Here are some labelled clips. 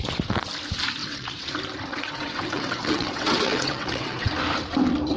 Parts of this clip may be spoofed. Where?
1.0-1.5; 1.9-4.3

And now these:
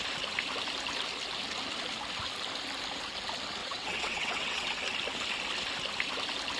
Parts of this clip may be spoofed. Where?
3.6-4.8